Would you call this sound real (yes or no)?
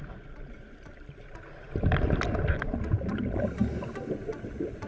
yes